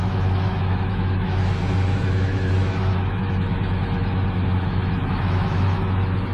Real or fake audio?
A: fake